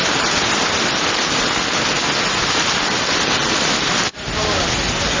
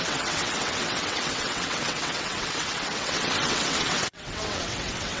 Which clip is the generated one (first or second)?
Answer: second